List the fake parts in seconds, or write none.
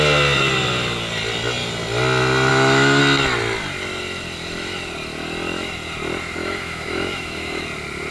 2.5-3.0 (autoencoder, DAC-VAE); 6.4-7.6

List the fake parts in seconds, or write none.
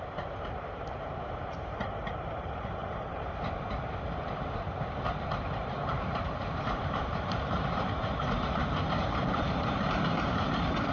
0.0-2.8 (vocoder, BigVGAN v2); 5.2-10.9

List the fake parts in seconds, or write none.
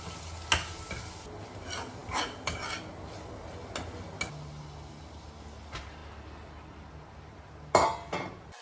none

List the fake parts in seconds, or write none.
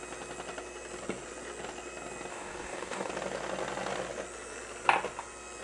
2.3-3.1 (codec, DAC)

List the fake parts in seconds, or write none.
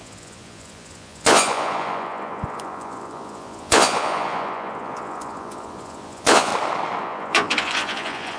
0.0-6.5 (vocoder, Vocos); 7.0-8.4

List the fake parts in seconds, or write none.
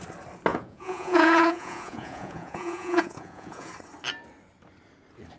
0.5-3.7 (vocoder, Vocos)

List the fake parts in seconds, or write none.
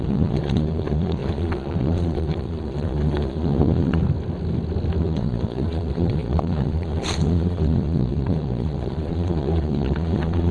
0.0-4.0 (vocoder, Vocos); 5.0-10.5